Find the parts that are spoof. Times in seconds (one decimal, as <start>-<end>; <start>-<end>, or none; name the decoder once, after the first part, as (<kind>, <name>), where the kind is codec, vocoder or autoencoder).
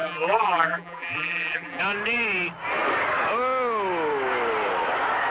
0.0-1.8 (vocoder, BigVGAN v2)